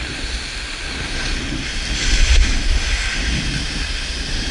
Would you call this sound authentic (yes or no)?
yes